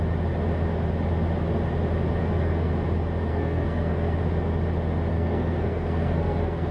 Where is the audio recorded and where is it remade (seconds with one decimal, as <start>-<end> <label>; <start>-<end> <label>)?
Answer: 0.0-2.2 recorded; 2.2-2.7 remade; 2.7-3.3 recorded; 3.3-4.2 remade; 4.2-5.1 recorded; 5.1-6.7 remade